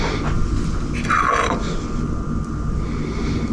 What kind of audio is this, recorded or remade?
recorded